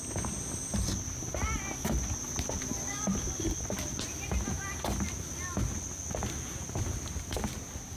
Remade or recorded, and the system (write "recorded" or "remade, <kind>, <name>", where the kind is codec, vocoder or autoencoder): recorded